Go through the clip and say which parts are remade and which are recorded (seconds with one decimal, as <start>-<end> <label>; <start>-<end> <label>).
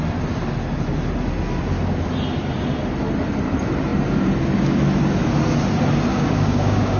0.0-6.1 recorded; 6.1-7.0 remade